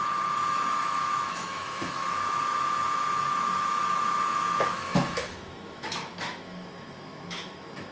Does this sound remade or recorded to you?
remade